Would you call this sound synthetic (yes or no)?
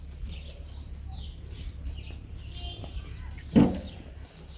no